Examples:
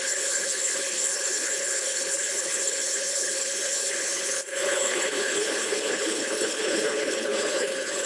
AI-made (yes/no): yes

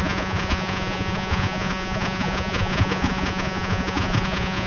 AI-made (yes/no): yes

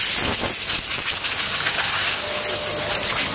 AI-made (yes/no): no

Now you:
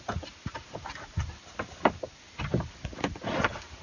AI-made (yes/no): no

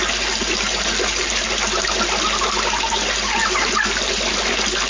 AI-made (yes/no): no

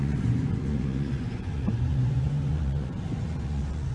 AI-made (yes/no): yes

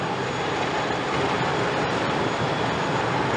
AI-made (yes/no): no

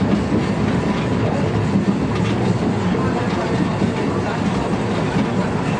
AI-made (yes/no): no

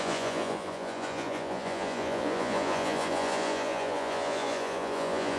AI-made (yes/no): yes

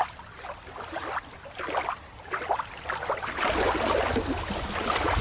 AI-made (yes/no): no